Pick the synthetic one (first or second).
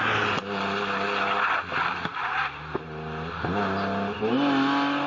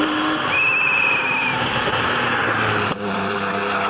second